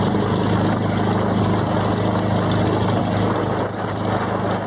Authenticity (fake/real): real